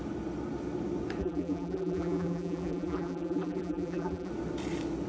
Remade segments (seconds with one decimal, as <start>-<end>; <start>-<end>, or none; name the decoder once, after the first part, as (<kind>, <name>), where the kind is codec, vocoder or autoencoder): 1.2-4.3 (vocoder, BigVGAN v2)